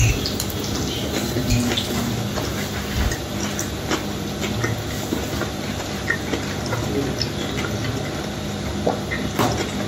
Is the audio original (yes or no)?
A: yes